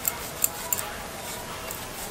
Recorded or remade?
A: recorded